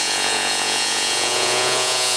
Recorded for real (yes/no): no